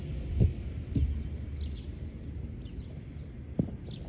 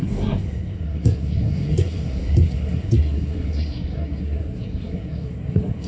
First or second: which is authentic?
first